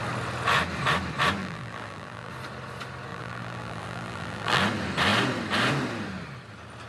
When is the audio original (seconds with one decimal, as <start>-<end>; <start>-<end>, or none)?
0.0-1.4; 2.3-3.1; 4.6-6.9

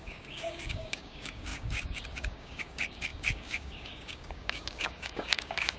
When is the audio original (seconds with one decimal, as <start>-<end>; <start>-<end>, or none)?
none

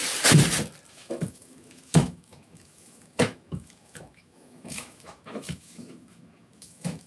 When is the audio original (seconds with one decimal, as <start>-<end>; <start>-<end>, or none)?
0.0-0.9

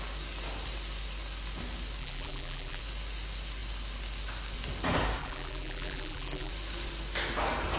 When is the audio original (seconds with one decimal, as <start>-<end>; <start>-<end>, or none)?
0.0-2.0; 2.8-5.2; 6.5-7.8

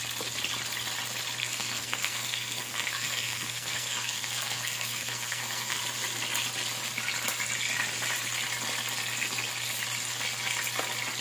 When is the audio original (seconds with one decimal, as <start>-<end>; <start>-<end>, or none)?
0.0-1.4; 5.8-11.2

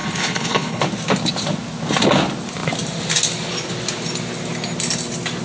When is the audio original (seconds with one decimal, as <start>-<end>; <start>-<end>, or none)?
0.8-5.4